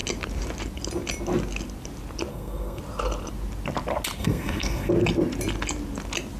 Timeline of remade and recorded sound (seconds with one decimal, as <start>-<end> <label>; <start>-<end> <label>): 0.0-2.3 recorded; 2.3-2.8 remade; 2.8-4.2 recorded; 4.2-4.9 remade; 4.9-6.4 recorded